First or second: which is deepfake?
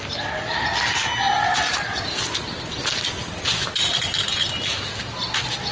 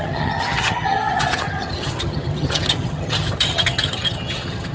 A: second